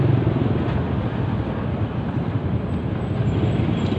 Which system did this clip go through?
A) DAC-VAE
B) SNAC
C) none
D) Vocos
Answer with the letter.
C